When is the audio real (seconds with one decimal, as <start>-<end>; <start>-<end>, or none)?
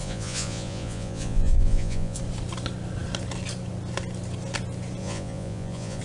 2.2-5.0